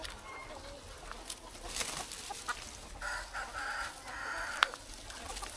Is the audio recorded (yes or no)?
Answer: yes